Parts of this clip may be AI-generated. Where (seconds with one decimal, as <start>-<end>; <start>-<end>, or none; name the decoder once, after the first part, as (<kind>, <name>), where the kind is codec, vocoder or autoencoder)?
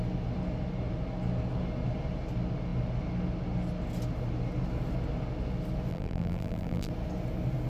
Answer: 5.9-6.9 (vocoder, BigVGAN v2)